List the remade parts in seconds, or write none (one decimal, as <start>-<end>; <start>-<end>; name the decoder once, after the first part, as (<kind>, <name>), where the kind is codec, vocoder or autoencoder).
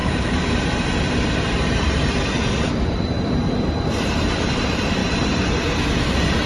0.0-6.5 (vocoder, BigVGAN v2)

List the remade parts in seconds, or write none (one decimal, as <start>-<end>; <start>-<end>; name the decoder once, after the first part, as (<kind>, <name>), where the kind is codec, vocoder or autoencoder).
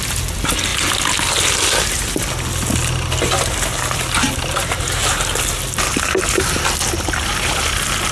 none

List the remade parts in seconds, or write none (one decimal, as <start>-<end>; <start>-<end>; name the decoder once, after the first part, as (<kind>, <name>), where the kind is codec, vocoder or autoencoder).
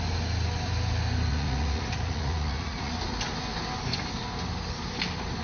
1.3-2.9 (vocoder, Vocos)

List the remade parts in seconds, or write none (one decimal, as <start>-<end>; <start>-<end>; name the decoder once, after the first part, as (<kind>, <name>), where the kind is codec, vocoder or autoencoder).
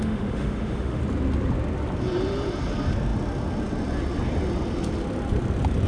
0.0-1.0 (autoencoder, DAC-VAE)